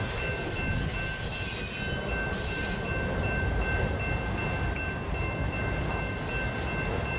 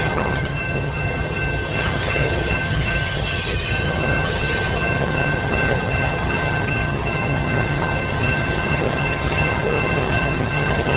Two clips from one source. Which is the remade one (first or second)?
second